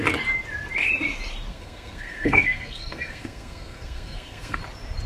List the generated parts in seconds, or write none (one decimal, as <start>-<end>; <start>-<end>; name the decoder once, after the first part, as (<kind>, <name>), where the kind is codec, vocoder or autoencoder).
1.5-4.6 (codec, SNAC)